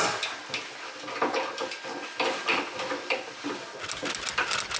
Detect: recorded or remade recorded